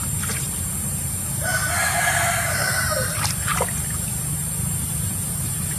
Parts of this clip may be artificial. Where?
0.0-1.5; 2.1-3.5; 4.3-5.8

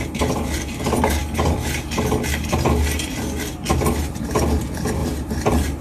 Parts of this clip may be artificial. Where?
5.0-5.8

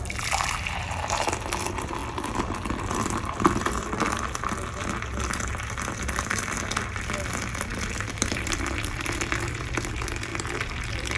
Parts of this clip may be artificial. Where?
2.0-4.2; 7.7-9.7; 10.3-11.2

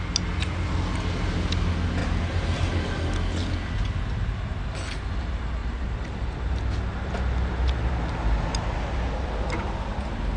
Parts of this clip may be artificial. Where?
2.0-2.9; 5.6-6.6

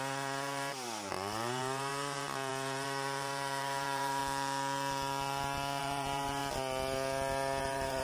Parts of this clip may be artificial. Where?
0.0-4.2; 5.8-6.4; 7.6-8.0